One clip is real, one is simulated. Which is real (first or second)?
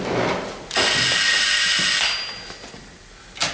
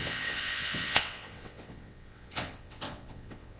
first